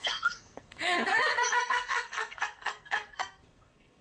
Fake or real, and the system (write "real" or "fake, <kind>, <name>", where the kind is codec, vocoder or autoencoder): fake, codec, SNAC